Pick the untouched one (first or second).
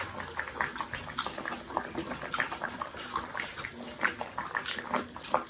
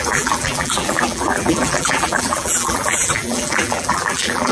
first